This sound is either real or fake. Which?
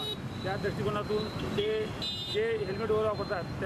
real